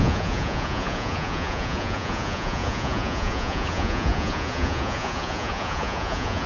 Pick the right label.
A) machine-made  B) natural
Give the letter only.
A